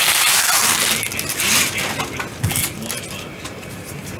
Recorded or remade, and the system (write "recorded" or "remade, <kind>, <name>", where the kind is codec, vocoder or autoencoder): recorded